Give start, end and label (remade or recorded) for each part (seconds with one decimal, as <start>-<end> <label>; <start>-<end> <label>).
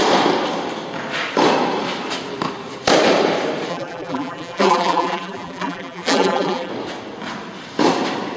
0.0-3.7 recorded; 3.7-6.7 remade; 6.7-8.4 recorded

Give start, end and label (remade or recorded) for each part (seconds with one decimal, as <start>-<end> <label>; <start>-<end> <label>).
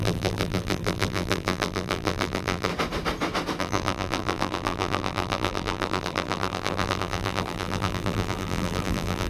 0.0-2.7 remade; 2.7-3.6 recorded; 3.6-9.3 remade